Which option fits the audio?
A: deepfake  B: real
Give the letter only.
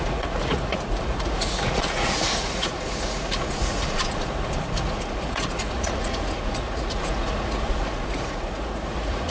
A